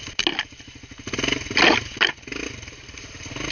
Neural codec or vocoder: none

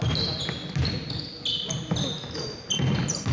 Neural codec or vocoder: none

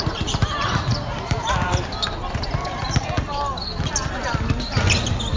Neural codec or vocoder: none